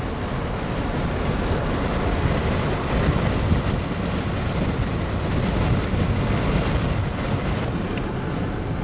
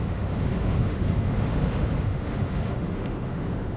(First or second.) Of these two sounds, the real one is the first